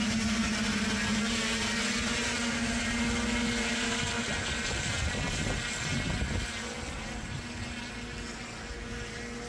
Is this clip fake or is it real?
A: real